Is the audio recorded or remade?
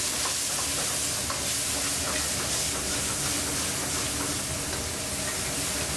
recorded